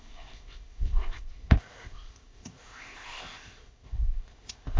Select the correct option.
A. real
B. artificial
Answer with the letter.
B